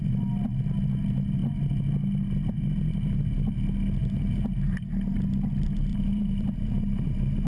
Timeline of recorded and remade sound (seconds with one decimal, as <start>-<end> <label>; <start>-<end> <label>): 0.0-4.0 recorded; 4.0-4.8 remade; 4.8-5.9 recorded; 5.9-7.1 remade; 7.1-7.5 recorded